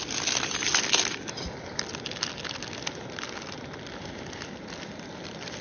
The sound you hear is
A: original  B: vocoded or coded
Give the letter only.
A